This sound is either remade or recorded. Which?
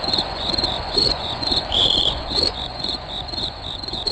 remade